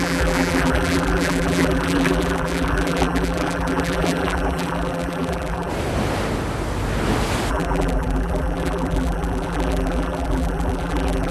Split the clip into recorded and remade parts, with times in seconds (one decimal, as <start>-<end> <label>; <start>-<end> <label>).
0.0-5.7 remade; 5.7-7.5 recorded; 7.5-11.3 remade